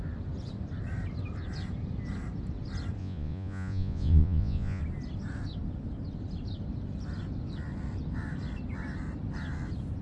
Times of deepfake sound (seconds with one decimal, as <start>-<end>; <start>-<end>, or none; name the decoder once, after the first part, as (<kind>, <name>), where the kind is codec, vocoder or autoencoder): 3.0-4.8 (vocoder, Vocos)